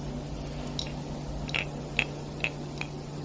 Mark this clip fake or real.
real